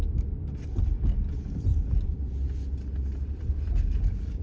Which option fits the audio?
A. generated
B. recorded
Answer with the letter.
A